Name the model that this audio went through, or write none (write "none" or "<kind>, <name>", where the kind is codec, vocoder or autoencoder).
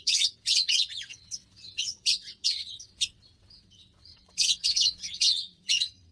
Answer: vocoder, WaveNeXt